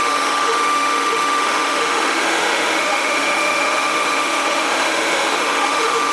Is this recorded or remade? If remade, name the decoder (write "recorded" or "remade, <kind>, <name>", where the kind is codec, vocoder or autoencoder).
remade, autoencoder, DAC-VAE